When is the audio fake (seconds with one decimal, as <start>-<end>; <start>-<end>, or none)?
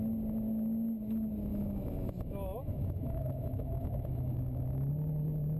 1.5-4.9